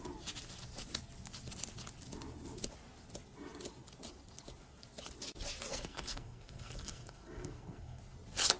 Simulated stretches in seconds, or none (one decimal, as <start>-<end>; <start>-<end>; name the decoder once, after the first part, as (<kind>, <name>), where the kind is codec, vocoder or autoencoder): 5.7-8.0 (codec, SNAC)